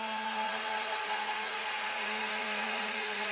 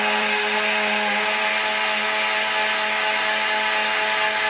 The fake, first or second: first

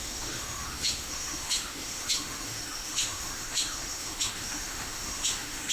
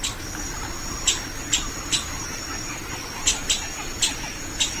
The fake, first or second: first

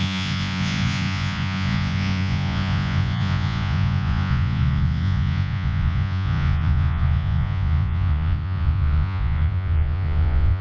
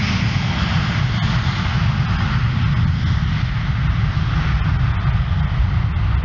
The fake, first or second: first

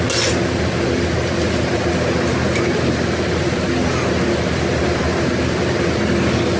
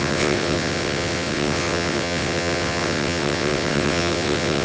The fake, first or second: second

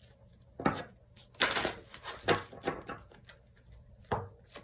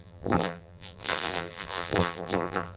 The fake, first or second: second